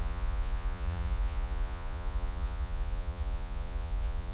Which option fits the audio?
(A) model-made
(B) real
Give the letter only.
A